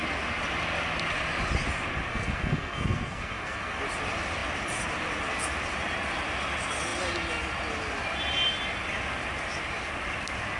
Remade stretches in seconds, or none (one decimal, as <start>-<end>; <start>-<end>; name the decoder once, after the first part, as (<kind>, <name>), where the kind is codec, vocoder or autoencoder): 2.1-3.8 (codec, SNAC)